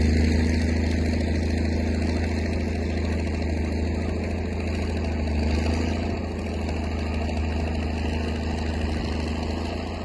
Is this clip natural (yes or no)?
yes